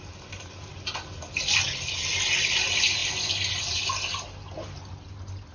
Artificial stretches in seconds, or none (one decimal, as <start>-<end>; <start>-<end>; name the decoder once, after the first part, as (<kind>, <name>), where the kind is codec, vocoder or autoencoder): none